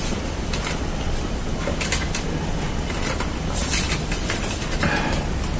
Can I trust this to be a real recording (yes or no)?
yes